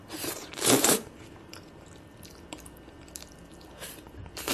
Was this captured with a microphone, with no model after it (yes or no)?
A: no